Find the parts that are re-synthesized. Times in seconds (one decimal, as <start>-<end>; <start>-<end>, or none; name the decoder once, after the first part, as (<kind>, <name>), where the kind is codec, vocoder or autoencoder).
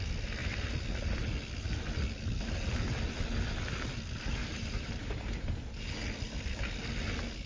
4.4-5.8 (vocoder, BigVGAN v2)